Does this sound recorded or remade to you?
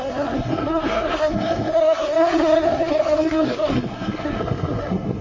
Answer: remade